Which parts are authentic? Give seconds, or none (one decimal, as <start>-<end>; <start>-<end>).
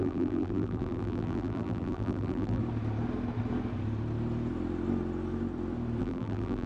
2.6-6.0